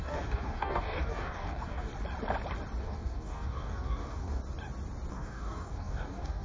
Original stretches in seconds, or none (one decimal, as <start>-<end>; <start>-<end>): 1.9-2.8; 4.4-5.1